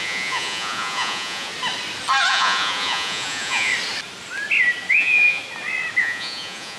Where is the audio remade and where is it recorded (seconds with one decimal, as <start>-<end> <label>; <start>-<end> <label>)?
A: 0.0-1.5 remade; 1.5-2.3 recorded; 2.3-3.7 remade; 3.7-4.9 recorded; 4.9-5.4 remade; 5.4-6.0 recorded; 6.0-6.8 remade